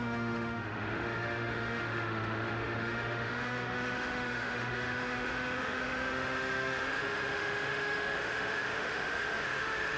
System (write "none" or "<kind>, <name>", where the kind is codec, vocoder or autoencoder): autoencoder, DAC-VAE